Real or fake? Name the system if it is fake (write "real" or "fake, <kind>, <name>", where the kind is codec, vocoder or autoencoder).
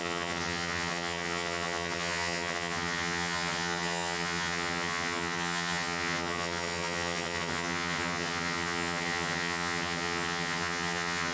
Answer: fake, vocoder, HiFi-GAN